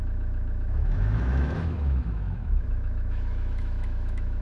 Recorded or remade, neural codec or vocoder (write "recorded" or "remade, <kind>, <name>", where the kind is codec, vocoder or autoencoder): remade, autoencoder, DAC-VAE